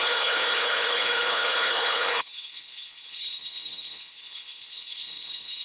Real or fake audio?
fake